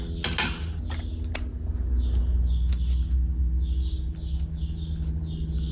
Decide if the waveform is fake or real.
real